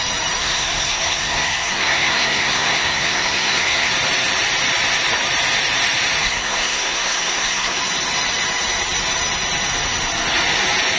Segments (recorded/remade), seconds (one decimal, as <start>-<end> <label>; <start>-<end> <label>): 0.0-0.4 recorded; 0.4-3.9 remade; 3.9-6.2 recorded; 6.2-7.8 remade; 7.8-11.0 recorded